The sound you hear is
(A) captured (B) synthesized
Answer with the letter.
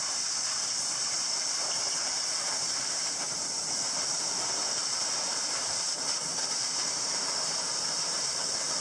B